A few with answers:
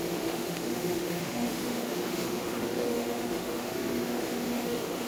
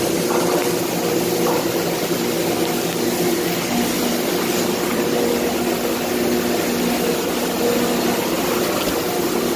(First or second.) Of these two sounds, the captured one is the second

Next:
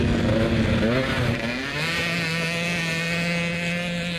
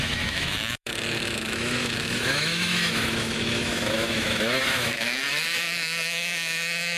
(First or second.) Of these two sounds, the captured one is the first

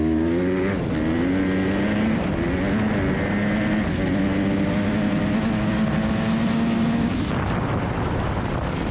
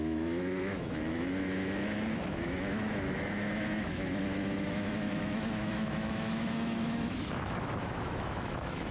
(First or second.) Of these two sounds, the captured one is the first